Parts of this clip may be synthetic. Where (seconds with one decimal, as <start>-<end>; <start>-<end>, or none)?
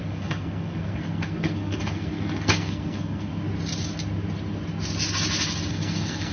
0.0-3.3; 5.7-6.3